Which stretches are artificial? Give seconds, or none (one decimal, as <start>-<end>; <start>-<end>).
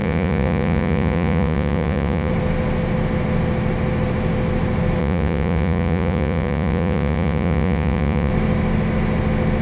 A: 0.0-2.3; 5.0-8.3